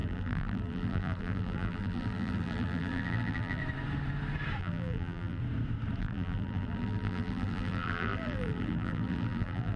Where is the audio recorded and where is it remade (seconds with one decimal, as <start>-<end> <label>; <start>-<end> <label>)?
0.0-3.6 remade; 3.6-4.6 recorded; 4.6-5.4 remade; 5.4-6.0 recorded; 6.0-9.8 remade